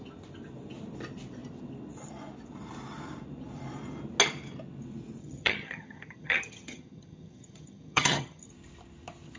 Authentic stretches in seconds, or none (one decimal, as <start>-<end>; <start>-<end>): 0.0-5.2; 8.5-9.4